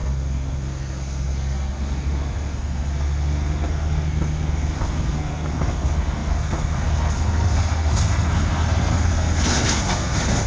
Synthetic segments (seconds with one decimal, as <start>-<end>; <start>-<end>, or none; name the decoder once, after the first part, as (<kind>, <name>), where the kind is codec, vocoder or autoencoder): 0.0-10.5 (codec, SNAC)